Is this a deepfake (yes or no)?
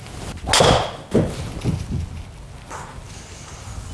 no